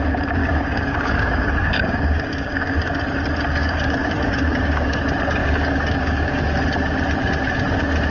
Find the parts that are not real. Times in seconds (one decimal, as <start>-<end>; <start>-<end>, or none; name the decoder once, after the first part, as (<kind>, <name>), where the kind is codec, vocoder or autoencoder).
0.4-2.9 (codec, DAC); 3.6-5.0; 5.4-6.4